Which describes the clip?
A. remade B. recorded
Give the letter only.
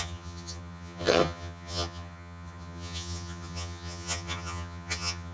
A